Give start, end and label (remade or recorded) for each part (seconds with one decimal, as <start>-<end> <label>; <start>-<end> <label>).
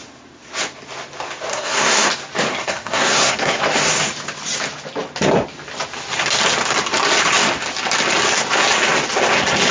0.0-1.5 recorded; 1.5-2.1 remade; 2.1-2.5 recorded; 2.5-3.6 remade; 3.6-9.7 recorded